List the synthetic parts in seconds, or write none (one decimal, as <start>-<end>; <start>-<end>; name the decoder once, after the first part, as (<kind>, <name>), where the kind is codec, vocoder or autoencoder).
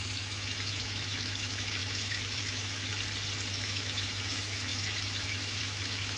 0.0-2.9 (autoencoder, DAC-VAE); 3.5-6.2